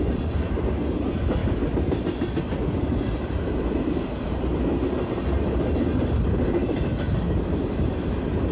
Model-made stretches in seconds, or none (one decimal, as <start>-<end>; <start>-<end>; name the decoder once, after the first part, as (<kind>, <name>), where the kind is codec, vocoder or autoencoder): none